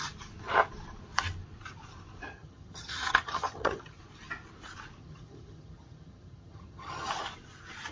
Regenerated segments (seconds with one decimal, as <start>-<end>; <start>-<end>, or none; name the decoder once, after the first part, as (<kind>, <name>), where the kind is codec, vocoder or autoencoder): 2.3-4.0 (vocoder, HiFi-GAN); 5.0-7.1